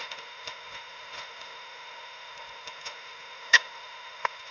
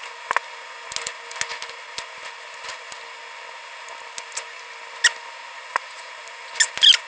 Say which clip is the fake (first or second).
first